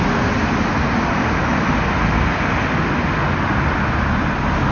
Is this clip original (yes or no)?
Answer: yes